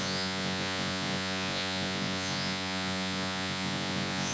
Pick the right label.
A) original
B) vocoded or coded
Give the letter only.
B